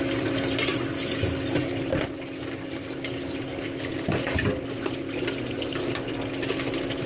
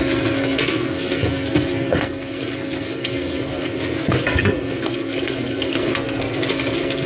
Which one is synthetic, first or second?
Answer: second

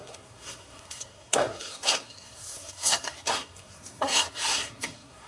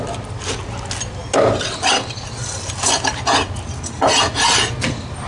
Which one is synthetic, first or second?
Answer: first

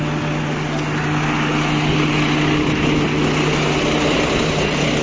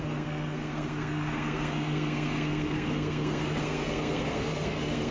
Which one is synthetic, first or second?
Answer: second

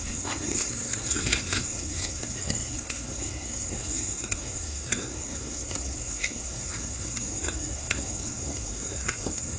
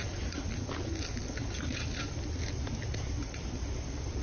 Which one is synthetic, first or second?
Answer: first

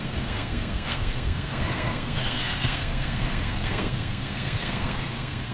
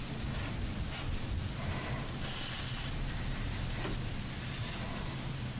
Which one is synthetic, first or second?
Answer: first